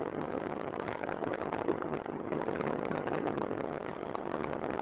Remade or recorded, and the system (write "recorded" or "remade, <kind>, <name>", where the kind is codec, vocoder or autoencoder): remade, vocoder, HiFi-GAN